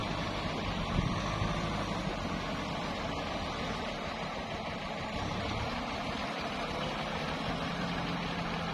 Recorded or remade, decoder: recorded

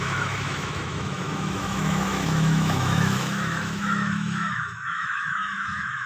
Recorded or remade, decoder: remade, autoencoder, DAC-VAE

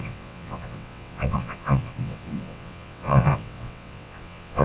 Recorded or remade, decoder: remade, vocoder, WaveNeXt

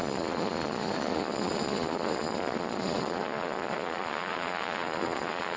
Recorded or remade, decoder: remade, vocoder, Vocos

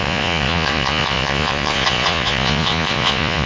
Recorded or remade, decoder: remade, vocoder, Vocos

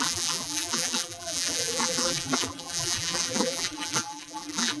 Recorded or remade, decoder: remade, vocoder, BigVGAN v2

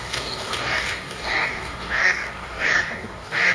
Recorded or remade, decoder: remade, codec, DAC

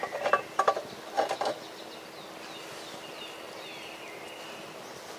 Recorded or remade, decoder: recorded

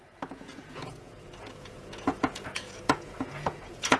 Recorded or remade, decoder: remade, vocoder, Vocos